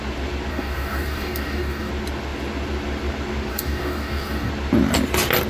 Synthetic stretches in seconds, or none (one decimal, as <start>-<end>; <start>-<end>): 0.5-1.9; 3.5-4.5